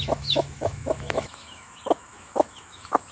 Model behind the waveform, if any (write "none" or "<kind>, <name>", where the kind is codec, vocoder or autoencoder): autoencoder, DAC-VAE